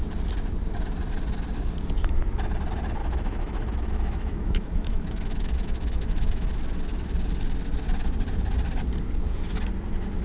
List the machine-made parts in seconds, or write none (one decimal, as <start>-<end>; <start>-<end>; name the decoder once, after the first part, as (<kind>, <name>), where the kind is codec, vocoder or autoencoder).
3.0-6.5 (autoencoder, DAC-VAE)